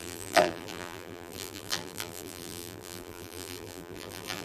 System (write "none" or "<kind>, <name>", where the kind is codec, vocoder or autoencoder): vocoder, BigVGAN v2